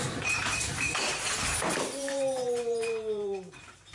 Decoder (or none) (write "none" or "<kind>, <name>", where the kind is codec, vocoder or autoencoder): vocoder, BigVGAN v2